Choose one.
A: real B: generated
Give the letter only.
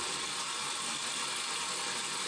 A